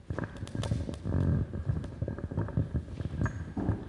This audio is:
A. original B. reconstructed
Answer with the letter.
A